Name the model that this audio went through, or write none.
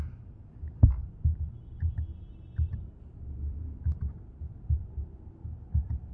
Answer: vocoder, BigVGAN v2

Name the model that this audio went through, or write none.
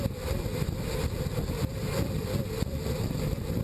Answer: none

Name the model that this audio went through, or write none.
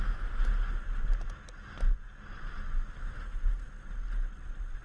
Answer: none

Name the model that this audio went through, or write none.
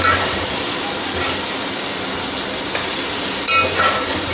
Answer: vocoder, BigVGAN v2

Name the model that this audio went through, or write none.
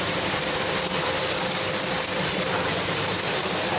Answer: none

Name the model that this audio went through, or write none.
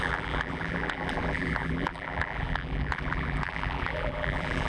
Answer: vocoder, BigVGAN v2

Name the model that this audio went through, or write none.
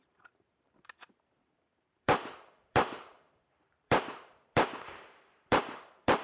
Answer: vocoder, BigVGAN v2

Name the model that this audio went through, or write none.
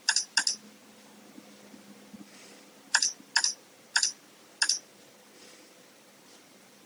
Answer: none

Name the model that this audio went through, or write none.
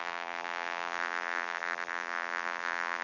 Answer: vocoder, BigVGAN v2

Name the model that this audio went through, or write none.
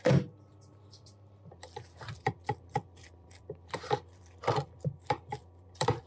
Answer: vocoder, BigVGAN v2